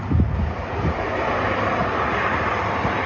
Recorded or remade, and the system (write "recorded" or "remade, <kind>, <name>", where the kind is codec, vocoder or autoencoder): recorded